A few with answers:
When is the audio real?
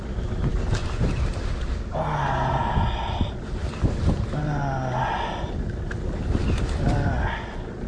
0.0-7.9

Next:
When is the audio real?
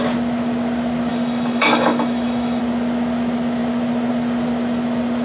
0.0-1.1; 2.6-5.2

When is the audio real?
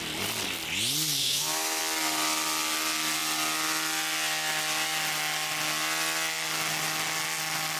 0.0-1.2; 1.8-7.8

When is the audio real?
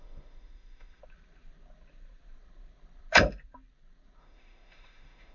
1.0-4.2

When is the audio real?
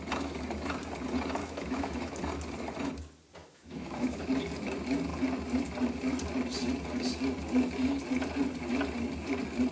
0.0-1.4; 2.2-3.4; 4.3-9.7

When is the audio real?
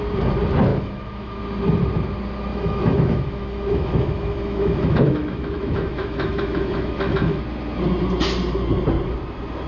0.0-0.7; 1.4-2.5; 7.4-9.7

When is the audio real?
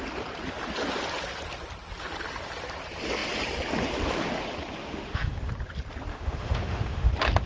0.0-4.8; 5.5-6.1; 7.1-7.5